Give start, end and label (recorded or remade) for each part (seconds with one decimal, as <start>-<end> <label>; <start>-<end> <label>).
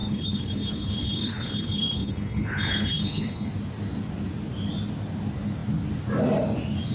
0.0-3.5 remade; 3.5-6.9 recorded